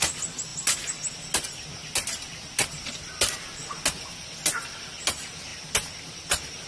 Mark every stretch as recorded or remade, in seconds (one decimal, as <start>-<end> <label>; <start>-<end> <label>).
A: 0.0-6.7 recorded